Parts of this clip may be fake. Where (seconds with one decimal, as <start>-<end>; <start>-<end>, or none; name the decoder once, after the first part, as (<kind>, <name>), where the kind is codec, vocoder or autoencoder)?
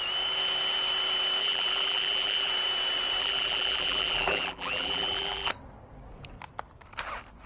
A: 1.4-2.5 (vocoder, BigVGAN v2); 3.2-5.5